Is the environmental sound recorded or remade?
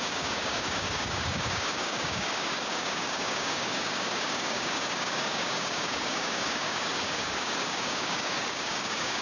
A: remade